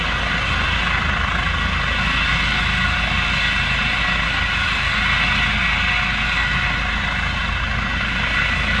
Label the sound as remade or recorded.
recorded